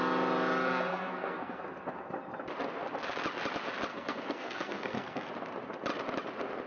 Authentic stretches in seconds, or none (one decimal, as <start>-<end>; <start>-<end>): 0.0-0.9; 1.6-3.9; 5.3-6.7